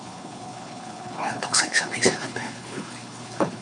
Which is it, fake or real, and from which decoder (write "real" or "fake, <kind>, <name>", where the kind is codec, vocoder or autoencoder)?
fake, codec, HILCodec